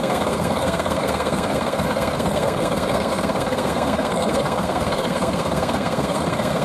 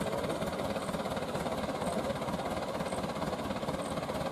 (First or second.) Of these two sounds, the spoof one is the first